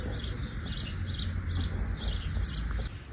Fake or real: real